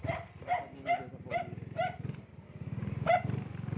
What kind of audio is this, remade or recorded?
remade